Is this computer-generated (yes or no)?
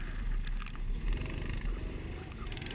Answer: no